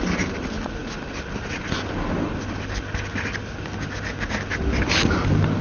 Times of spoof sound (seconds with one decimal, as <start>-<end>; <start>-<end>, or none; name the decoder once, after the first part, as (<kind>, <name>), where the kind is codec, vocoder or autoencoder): none

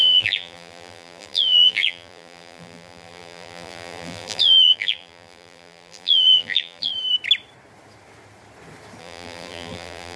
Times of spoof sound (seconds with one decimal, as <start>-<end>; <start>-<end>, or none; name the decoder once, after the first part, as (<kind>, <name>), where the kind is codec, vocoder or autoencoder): 0.0-6.9 (vocoder, BigVGAN v2); 9.0-10.2

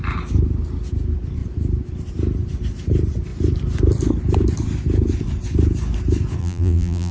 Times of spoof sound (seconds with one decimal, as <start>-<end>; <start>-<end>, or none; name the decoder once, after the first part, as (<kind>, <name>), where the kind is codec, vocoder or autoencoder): 6.4-7.1 (vocoder, BigVGAN v2)

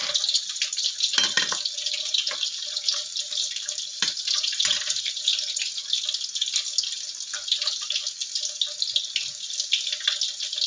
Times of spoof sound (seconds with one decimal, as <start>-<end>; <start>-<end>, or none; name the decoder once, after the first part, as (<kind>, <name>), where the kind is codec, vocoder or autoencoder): 0.8-5.3 (vocoder, BigVGAN v2)

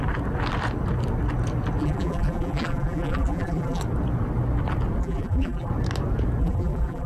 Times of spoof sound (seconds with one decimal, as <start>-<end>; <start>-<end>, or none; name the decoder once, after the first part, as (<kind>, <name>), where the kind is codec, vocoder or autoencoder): 1.8-3.8 (vocoder, BigVGAN v2); 5.0-5.7; 6.4-7.1